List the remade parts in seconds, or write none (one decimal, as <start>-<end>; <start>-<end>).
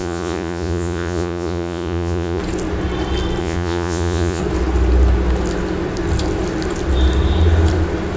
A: 0.0-2.4; 3.4-4.4